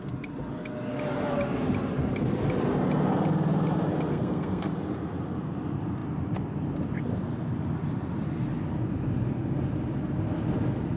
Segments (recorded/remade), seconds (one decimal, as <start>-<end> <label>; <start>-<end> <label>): 0.0-4.1 recorded; 4.1-4.7 remade; 4.7-11.0 recorded